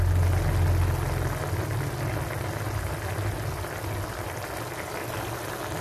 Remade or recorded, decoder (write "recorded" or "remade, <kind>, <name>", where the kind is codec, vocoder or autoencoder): recorded